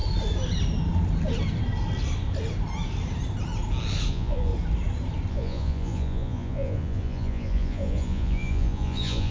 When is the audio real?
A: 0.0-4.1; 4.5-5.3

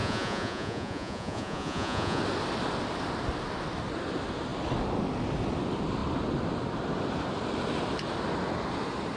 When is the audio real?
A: 2.2-9.2

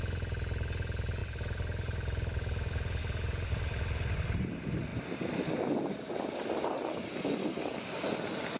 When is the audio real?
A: 0.0-8.6